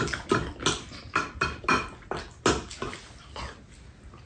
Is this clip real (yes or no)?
yes